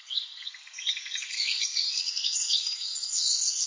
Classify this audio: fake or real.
fake